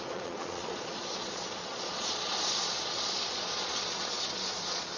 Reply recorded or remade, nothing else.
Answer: remade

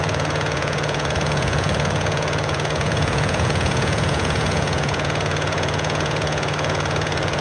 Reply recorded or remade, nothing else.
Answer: remade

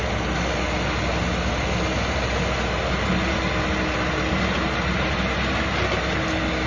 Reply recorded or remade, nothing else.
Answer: recorded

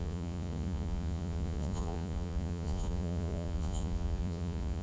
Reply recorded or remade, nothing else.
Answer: remade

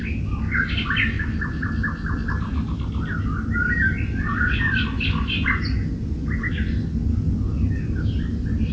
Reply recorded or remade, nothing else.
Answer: recorded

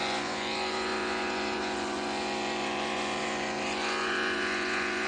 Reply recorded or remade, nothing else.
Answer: remade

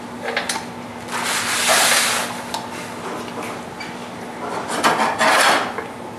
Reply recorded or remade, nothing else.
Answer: recorded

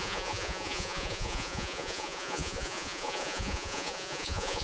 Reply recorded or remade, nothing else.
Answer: remade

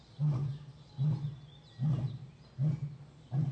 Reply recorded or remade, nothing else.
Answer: recorded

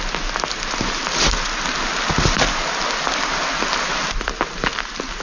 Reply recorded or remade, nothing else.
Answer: recorded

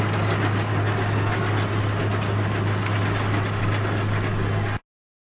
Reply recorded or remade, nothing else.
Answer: recorded